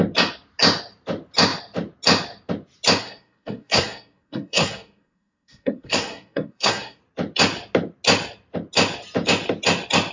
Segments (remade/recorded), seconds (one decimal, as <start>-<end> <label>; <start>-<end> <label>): 0.0-3.0 recorded; 3.0-7.0 remade; 7.0-10.1 recorded